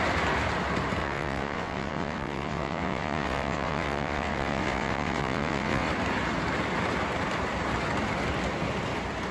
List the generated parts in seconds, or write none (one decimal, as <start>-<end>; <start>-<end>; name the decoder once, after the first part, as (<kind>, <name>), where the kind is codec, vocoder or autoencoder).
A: 1.0-5.9 (vocoder, WaveNeXt)